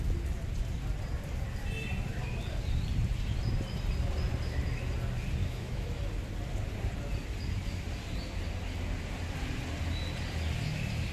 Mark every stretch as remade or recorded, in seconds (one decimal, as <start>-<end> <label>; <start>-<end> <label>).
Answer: 0.0-5.4 recorded; 5.4-6.0 remade; 6.0-11.1 recorded

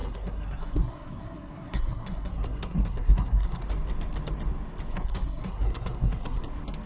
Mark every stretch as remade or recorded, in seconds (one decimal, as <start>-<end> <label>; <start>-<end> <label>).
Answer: 0.0-3.6 remade; 3.6-4.9 recorded; 4.9-6.4 remade; 6.4-6.9 recorded

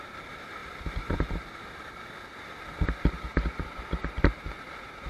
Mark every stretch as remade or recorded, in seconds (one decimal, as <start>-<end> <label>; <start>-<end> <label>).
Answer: 0.0-5.1 recorded